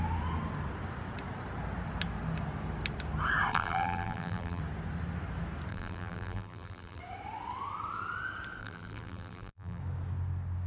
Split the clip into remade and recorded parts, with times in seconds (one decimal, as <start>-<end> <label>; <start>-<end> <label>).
0.0-3.5 recorded; 3.5-4.6 remade; 4.6-5.7 recorded; 5.7-7.0 remade; 7.0-8.6 recorded; 8.6-9.8 remade; 9.8-10.7 recorded